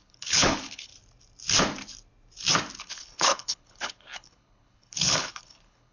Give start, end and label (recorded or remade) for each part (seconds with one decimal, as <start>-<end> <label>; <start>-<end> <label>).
0.0-0.9 remade; 0.9-2.8 recorded; 2.8-5.9 remade